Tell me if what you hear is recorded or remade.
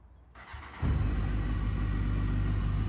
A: recorded